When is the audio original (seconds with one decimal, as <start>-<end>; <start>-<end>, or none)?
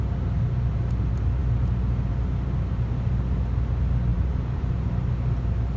0.0-4.1; 4.9-5.8